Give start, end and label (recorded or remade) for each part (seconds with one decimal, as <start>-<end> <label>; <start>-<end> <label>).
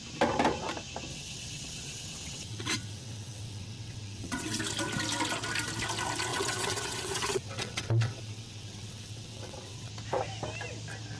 0.0-1.1 recorded; 1.1-4.6 remade; 4.6-6.3 recorded; 6.3-9.9 remade; 9.9-11.2 recorded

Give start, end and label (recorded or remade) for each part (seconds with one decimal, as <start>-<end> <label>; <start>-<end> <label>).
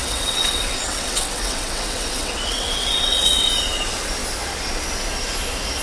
0.0-3.5 remade; 3.5-5.8 recorded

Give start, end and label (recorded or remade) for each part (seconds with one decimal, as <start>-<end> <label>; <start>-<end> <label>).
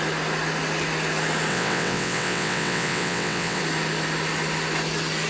0.0-1.5 recorded; 1.5-3.6 remade; 3.6-5.3 recorded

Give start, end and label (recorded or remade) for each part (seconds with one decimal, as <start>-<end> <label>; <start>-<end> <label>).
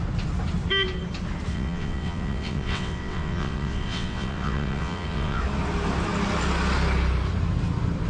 0.0-1.5 recorded; 1.5-5.4 remade; 5.4-8.1 recorded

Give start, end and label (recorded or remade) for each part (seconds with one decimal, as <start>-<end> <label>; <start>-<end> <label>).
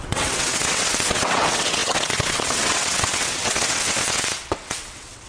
0.0-5.3 remade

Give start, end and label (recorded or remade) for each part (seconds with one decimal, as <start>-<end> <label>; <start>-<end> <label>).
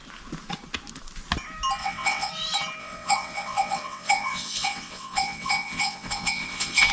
0.0-1.8 recorded; 1.8-2.3 remade; 2.3-2.8 recorded; 2.8-6.9 remade